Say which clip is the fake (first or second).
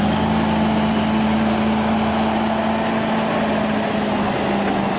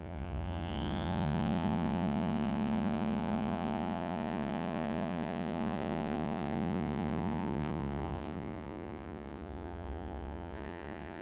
second